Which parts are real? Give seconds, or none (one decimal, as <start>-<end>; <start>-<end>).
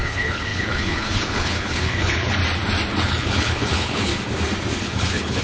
2.4-2.9; 4.1-4.8